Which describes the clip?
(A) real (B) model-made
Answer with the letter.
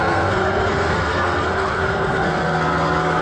B